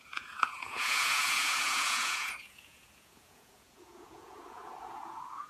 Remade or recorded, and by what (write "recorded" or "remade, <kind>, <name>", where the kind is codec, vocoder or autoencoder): remade, vocoder, Vocos